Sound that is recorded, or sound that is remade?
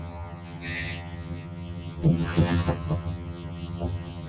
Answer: remade